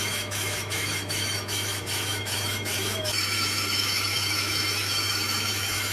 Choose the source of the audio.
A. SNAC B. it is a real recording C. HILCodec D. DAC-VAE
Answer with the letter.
D